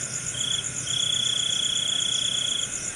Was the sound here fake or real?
real